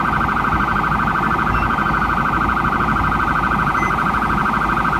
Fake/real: fake